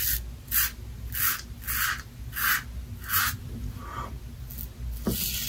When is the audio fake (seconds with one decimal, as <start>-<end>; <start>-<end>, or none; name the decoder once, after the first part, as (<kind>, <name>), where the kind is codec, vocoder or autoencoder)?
3.1-4.1 (vocoder, BigVGAN v2)